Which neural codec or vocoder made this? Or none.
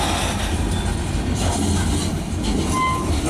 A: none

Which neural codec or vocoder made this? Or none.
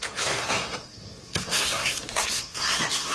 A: codec, SNAC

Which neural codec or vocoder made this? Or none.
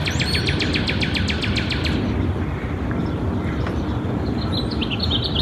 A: none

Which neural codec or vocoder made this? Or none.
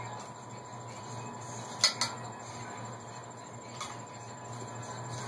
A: none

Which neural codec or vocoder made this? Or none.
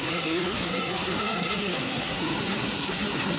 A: codec, SNAC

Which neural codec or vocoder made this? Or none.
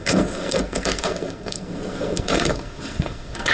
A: codec, SNAC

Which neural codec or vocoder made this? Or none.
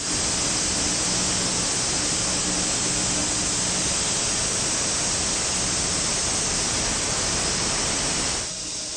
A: none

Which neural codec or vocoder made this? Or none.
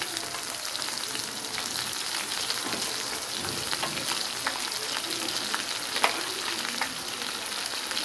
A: none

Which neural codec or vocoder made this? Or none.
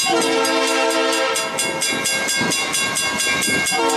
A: none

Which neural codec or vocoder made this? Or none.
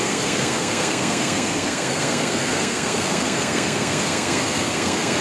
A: codec, SNAC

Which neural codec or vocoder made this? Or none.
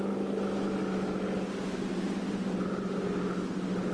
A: none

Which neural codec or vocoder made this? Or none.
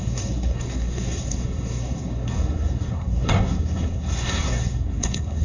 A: codec, SNAC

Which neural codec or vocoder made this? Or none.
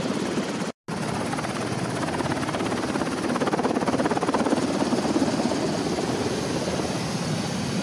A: none